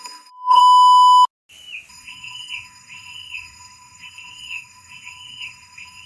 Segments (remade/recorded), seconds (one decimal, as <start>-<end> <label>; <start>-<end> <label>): 0.0-0.6 remade; 0.6-1.9 recorded; 1.9-6.1 remade